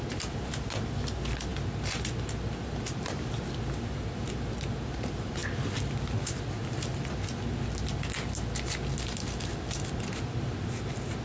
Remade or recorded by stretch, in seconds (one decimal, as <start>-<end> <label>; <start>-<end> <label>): 0.0-11.2 recorded